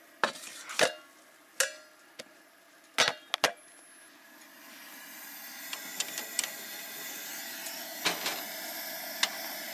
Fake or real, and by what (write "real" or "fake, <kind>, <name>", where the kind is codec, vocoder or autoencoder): real